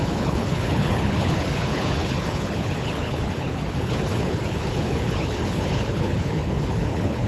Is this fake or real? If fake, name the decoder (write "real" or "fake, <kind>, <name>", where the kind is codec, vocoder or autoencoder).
fake, codec, HILCodec